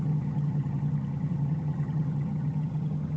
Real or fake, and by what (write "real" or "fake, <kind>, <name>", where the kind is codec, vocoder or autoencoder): fake, vocoder, HiFi-GAN